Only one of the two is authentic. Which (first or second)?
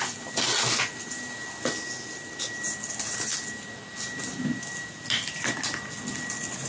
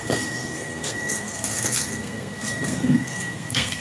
first